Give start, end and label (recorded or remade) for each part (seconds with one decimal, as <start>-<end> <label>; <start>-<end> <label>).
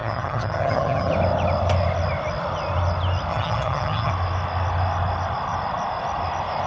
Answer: 0.0-1.1 remade; 1.1-3.3 recorded; 3.3-4.1 remade; 4.1-6.7 recorded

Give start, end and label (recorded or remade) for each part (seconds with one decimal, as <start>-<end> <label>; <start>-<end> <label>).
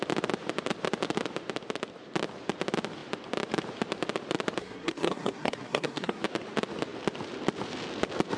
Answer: 0.0-4.6 recorded; 4.6-6.2 remade; 6.2-8.4 recorded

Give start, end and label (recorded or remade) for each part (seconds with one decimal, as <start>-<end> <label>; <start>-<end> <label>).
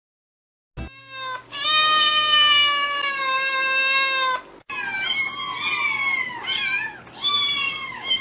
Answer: 0.0-0.5 remade; 0.5-1.0 recorded; 1.0-3.2 remade; 3.2-7.3 recorded; 7.3-8.2 remade